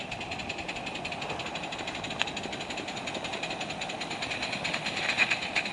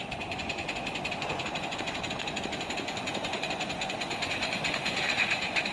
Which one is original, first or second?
first